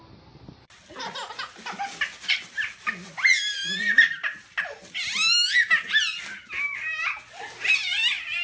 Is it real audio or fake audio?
real